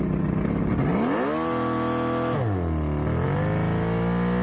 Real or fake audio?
real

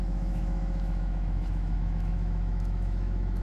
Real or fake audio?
fake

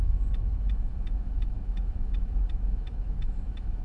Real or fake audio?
fake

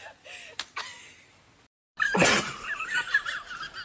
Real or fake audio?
real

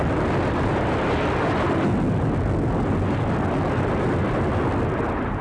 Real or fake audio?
real